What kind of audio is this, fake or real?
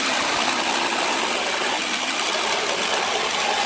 real